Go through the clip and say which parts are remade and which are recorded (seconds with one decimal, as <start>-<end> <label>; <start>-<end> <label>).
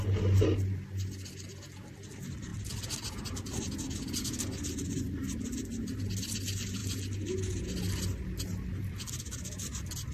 0.0-10.1 recorded